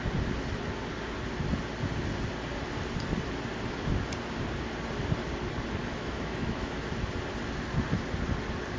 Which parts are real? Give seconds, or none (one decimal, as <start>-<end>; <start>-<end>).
0.0-5.8; 6.9-8.8